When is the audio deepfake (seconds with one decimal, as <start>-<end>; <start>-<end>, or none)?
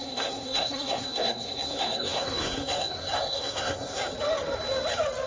0.0-4.0